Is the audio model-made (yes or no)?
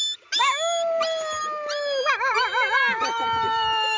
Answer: no